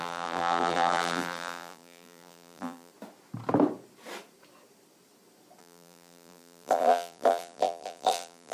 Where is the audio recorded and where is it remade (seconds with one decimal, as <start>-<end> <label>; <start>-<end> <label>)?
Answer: 0.0-2.9 remade; 2.9-5.6 recorded; 5.6-8.5 remade